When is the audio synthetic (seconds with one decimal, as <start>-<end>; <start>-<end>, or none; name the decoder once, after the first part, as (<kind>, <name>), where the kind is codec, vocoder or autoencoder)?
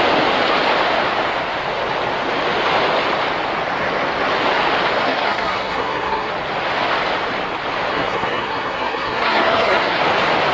5.0-6.3 (codec, SNAC); 7.9-10.0